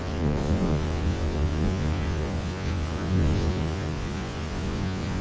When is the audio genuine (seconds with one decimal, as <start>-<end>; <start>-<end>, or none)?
none